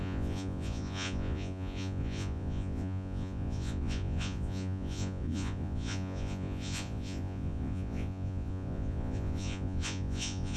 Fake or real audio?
fake